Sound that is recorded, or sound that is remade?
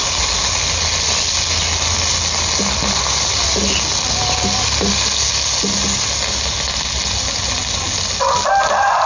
recorded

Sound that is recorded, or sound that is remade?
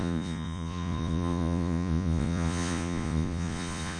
remade